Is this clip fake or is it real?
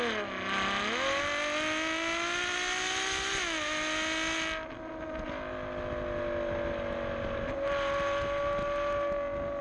real